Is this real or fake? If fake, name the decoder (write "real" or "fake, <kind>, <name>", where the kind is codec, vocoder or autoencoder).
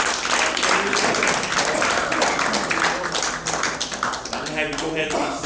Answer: real